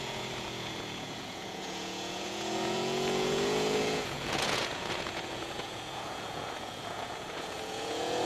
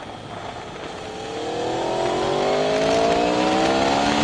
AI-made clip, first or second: first